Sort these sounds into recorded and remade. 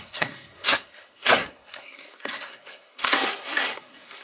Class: remade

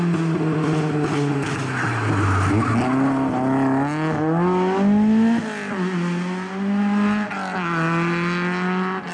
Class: recorded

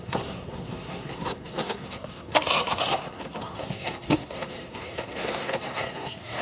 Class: remade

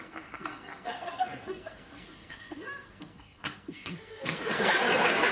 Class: remade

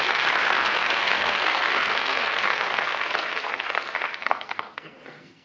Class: remade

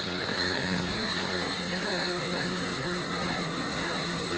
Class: remade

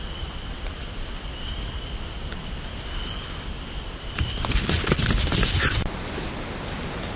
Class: recorded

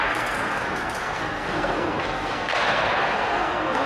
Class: remade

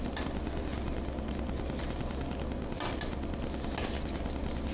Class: recorded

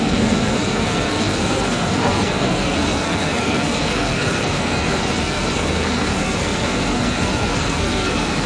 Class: remade